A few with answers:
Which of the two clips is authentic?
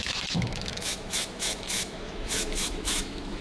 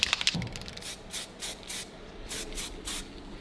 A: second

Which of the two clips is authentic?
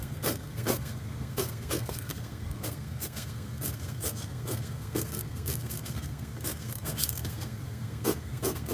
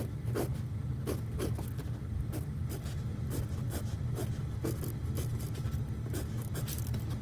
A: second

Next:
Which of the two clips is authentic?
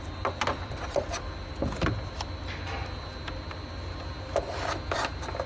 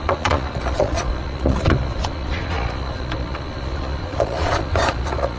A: first